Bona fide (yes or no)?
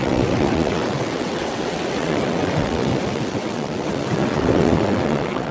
no